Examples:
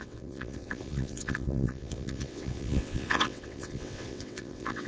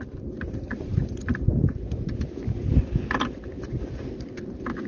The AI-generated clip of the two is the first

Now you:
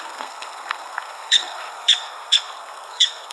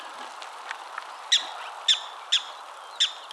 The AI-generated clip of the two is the first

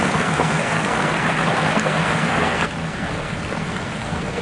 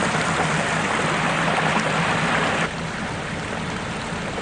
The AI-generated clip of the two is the first